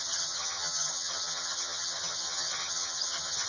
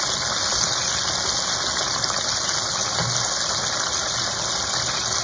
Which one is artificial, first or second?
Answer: first